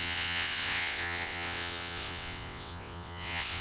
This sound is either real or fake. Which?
fake